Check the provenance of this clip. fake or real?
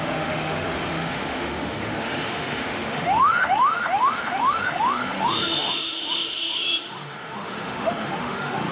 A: fake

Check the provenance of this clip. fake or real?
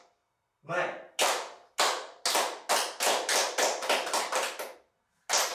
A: real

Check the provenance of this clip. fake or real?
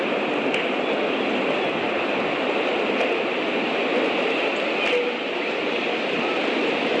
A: real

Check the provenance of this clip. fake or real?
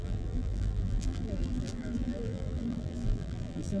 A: fake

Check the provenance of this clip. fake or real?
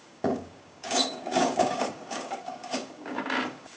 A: fake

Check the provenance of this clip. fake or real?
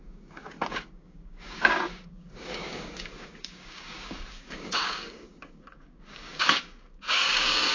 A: fake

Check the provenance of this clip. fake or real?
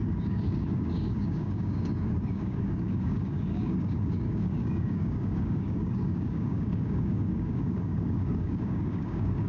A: fake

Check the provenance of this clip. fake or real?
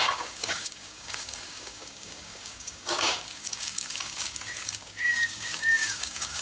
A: fake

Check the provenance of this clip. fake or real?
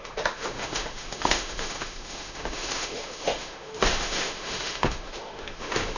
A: fake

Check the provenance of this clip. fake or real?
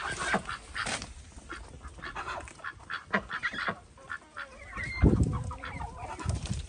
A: real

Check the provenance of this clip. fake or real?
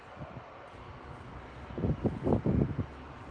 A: real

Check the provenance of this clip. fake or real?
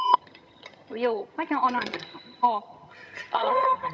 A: fake